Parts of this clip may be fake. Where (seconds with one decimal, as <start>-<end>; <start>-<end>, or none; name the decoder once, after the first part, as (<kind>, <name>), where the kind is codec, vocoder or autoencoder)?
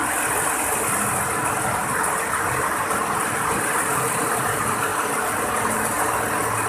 none